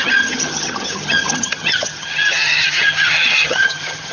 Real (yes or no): no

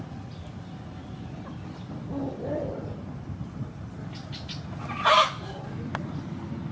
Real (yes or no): yes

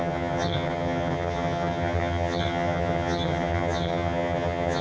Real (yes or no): no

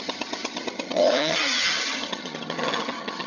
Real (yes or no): no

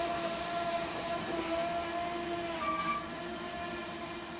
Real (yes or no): yes